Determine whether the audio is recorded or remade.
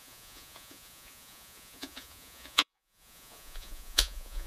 remade